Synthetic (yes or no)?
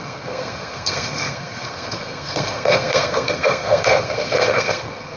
yes